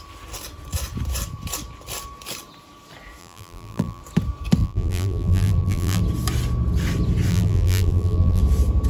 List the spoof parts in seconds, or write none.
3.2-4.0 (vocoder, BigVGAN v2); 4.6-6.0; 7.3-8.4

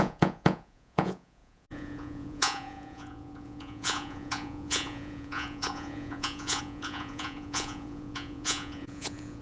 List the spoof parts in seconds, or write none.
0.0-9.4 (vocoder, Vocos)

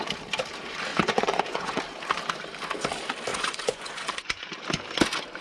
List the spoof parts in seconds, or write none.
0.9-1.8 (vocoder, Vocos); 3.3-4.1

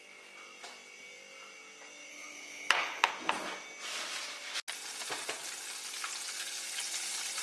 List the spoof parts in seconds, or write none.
2.1-3.1 (codec, HILCodec)

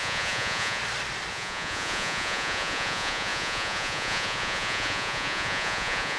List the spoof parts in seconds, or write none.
0.0-0.8 (vocoder, Vocos); 1.3-6.2

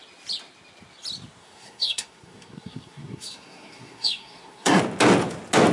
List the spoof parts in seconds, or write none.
1.4-4.8 (codec, SNAC)

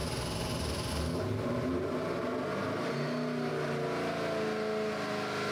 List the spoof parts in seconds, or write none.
none

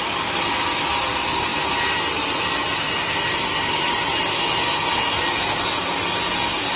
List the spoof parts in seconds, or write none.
none